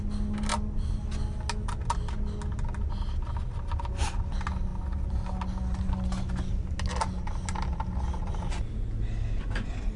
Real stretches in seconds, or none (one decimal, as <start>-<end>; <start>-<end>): 0.0-10.0